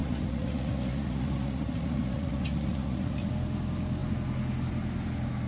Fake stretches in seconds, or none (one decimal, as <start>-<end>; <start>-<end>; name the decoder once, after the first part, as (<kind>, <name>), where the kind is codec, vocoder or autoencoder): 0.0-3.3 (vocoder, Vocos)